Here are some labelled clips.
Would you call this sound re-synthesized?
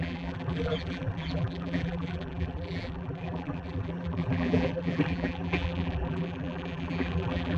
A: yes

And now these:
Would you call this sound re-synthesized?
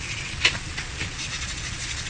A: yes